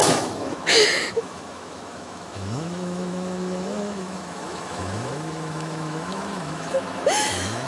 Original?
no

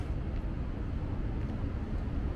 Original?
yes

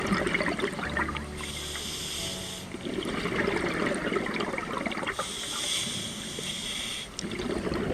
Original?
yes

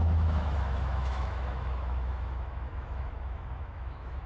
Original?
no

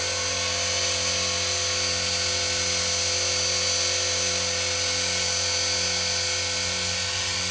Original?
yes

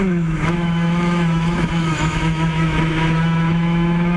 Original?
no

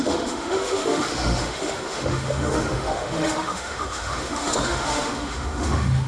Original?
no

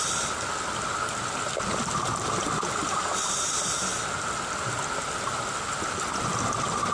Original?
yes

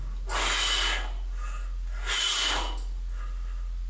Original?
yes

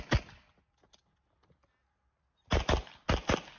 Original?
yes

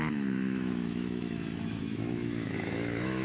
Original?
no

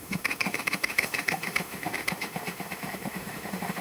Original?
no